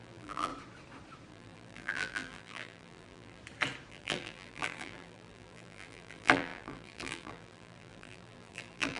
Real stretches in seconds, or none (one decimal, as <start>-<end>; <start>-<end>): 0.5-1.3; 3.4-3.9